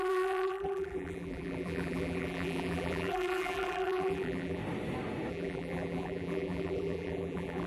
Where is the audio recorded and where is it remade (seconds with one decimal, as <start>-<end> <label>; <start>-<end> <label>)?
0.0-4.6 remade; 4.6-5.3 recorded; 5.3-7.7 remade